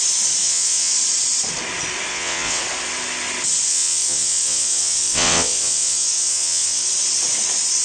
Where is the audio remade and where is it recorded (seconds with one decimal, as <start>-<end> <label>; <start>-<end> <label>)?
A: 0.0-0.4 recorded; 0.4-0.9 remade; 0.9-2.1 recorded; 2.1-2.6 remade; 2.6-3.7 recorded; 3.7-6.9 remade; 6.9-7.8 recorded